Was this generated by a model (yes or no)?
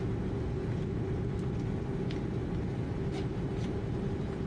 no